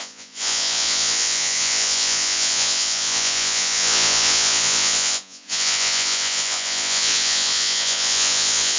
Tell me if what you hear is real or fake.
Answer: fake